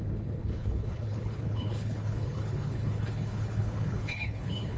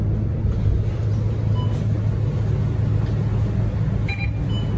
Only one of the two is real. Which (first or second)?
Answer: second